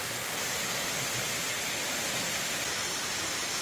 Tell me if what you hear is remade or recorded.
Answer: recorded